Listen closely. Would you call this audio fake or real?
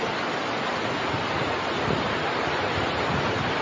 real